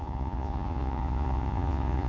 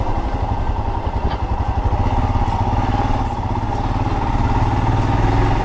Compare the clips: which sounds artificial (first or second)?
first